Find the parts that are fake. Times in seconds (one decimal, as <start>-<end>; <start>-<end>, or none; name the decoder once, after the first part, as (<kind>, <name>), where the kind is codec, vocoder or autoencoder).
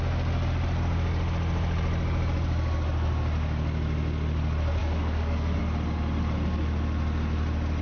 4.8-5.6 (codec, DAC)